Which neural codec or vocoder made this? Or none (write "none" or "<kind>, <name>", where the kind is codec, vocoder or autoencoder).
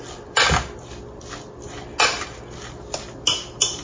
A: none